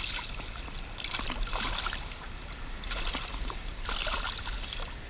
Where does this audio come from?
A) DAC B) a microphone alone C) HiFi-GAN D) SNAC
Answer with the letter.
B